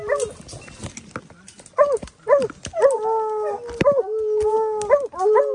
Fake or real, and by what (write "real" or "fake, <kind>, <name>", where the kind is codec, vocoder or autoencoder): real